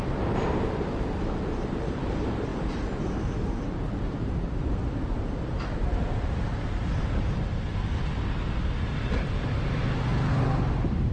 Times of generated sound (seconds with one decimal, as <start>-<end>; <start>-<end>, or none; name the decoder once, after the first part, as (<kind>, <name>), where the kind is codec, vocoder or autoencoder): 0.0-4.8 (vocoder, BigVGAN v2); 5.9-10.1